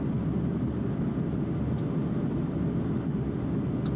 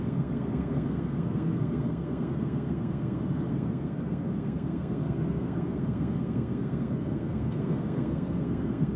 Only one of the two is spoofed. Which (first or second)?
second